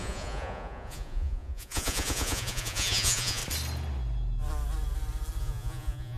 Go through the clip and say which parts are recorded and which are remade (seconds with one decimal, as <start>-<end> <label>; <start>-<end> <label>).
0.0-3.4 remade; 3.4-5.4 recorded; 5.4-6.2 remade